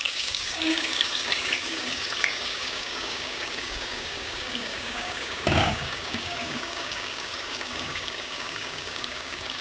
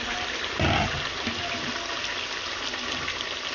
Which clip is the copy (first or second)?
first